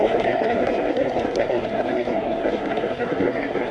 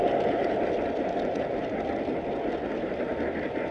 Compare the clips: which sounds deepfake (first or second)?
first